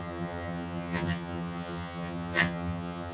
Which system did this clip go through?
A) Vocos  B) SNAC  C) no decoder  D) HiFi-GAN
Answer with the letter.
D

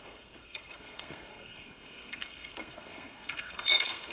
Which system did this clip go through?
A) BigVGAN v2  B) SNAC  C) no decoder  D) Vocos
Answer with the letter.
B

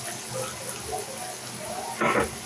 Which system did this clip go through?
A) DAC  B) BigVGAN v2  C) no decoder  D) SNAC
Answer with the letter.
C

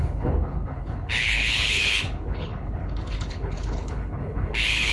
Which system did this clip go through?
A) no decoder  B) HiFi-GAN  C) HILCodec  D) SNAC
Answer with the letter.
C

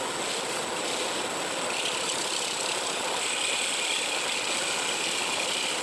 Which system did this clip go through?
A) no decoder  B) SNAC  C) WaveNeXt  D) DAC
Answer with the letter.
A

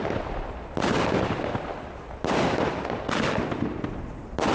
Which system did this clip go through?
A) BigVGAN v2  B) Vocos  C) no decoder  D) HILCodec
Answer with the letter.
C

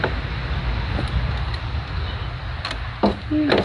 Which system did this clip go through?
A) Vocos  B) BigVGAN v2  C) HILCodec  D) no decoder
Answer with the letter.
D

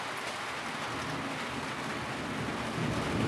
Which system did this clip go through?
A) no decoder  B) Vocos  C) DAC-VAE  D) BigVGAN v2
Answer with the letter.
A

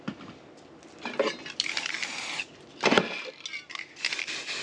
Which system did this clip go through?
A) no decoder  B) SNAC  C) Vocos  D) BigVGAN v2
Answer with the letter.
A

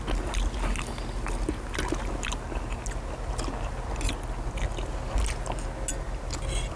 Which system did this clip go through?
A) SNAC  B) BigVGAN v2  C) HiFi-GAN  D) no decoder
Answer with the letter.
D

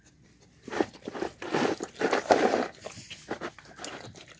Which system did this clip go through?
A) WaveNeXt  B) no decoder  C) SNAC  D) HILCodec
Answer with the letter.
B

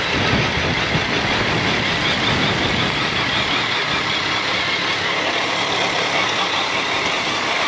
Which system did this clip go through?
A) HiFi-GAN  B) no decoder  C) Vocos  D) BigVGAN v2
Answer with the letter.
B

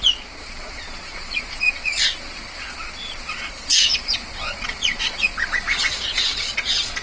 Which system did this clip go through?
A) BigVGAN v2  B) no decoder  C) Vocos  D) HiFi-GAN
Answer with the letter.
C